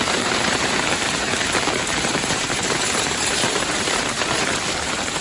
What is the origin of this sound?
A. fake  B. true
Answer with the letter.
A